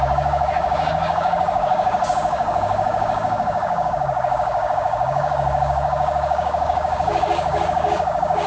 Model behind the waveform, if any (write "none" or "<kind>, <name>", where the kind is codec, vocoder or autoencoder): codec, DAC